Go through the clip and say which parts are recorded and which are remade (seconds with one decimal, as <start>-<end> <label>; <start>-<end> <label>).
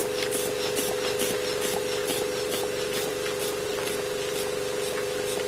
0.0-5.5 recorded